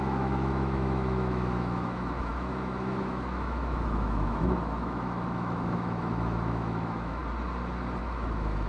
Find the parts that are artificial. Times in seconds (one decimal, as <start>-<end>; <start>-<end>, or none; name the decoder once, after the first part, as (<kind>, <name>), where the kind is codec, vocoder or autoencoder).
0.0-7.2 (autoencoder, DAC-VAE); 8.0-8.7

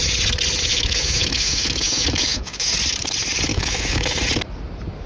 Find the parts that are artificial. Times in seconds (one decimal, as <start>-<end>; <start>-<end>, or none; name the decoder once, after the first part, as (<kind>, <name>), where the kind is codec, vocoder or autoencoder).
0.7-2.7 (autoencoder, DAC-VAE); 3.5-4.2

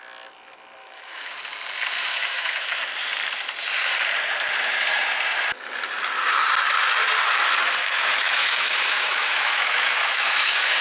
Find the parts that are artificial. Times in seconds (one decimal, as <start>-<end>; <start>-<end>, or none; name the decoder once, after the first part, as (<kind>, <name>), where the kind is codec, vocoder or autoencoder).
0.8-1.3 (autoencoder, DAC-VAE); 2.1-2.8; 7.8-10.8

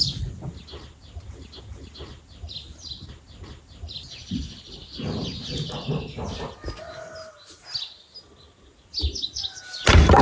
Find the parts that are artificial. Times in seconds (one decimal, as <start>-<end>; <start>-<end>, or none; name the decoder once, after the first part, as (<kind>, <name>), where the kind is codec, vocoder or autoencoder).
none